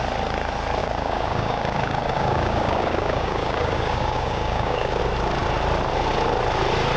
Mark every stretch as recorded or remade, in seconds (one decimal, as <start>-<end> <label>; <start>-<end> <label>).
0.0-0.8 recorded; 0.8-5.0 remade; 5.0-7.0 recorded